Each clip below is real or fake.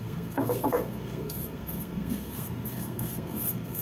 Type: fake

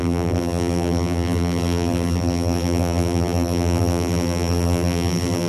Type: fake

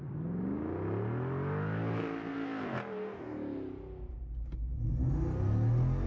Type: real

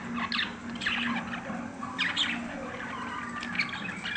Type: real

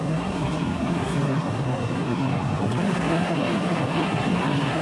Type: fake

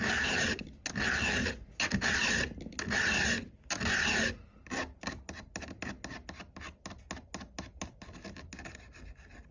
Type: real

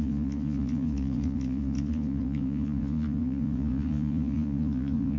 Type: fake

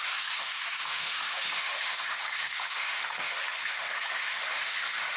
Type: fake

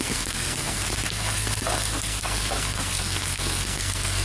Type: fake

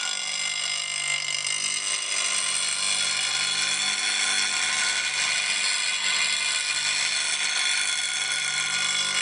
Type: real